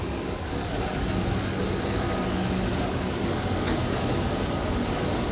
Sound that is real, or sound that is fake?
fake